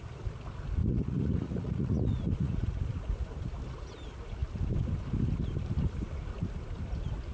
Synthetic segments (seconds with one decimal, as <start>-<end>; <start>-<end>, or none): 0.8-2.7